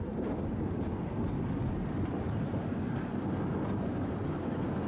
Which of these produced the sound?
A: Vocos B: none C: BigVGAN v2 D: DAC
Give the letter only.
B